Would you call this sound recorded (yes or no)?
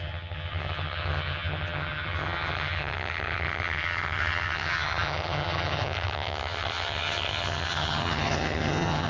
no